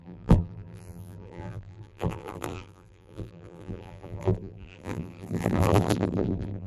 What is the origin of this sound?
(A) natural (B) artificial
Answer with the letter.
B